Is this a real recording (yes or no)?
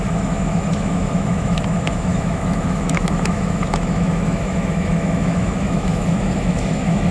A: no